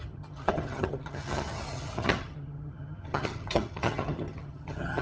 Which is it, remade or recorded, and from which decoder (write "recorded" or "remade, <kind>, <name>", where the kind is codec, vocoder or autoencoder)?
remade, vocoder, HiFi-GAN